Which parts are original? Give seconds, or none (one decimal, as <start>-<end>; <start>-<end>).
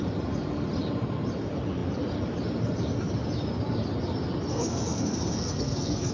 0.0-4.5